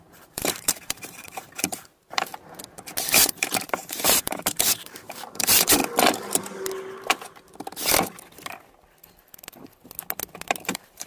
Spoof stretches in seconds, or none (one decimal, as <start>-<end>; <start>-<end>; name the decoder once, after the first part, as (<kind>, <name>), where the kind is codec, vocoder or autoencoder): 0.0-2.3 (vocoder, BigVGAN v2); 3.1-5.8; 10.7-11.1